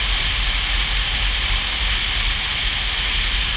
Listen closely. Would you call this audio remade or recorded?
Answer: recorded